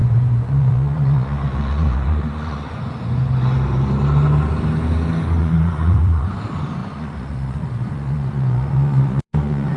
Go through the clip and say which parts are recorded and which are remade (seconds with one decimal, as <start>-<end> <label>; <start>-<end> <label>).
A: 0.0-2.8 remade; 2.8-5.4 recorded; 5.4-6.3 remade; 6.3-6.8 recorded; 6.8-9.8 remade